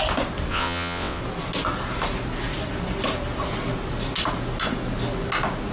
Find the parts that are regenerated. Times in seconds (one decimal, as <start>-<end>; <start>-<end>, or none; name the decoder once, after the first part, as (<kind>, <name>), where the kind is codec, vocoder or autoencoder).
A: 0.5-1.2 (vocoder, WaveNeXt)